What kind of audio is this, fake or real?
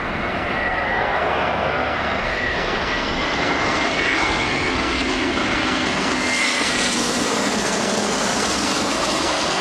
fake